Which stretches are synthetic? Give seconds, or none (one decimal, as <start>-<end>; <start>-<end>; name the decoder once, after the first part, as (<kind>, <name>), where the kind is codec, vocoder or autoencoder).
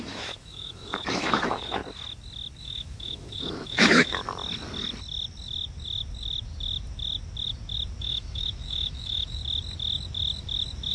0.0-1.8 (autoencoder, DAC-VAE); 2.6-4.2; 8.0-9.4